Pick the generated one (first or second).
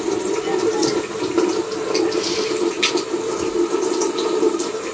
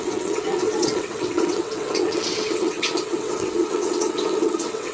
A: second